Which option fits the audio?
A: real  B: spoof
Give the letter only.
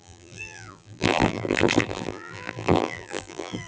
B